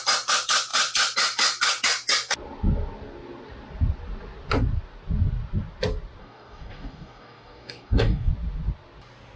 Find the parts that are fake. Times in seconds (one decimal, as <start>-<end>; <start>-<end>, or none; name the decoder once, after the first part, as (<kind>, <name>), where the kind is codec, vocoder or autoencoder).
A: 6.2-8.3 (codec, DAC)